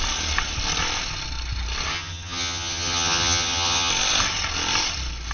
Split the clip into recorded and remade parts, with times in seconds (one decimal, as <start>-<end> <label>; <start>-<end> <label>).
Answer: 0.0-1.9 recorded; 1.9-3.9 remade; 3.9-5.3 recorded